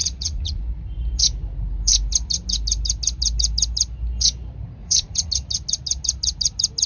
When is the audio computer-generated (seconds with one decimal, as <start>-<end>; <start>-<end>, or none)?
0.0-0.6; 4.8-5.3